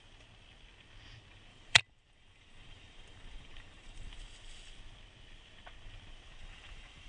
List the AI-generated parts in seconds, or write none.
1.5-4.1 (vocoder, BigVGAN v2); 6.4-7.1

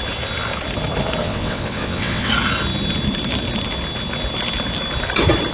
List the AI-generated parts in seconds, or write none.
1.2-2.3 (vocoder, WaveNeXt)

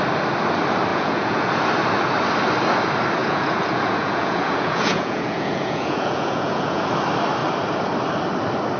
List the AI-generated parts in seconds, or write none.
0.9-1.5 (vocoder, Vocos); 3.2-6.9

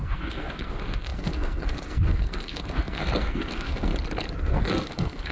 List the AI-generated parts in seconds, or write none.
0.0-3.9 (codec, SNAC); 4.4-5.3

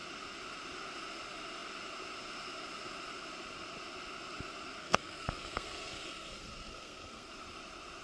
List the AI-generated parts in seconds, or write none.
4.8-7.3 (codec, SNAC)